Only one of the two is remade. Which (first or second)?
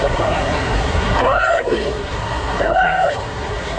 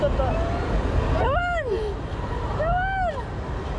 first